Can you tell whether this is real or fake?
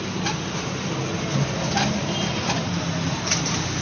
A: real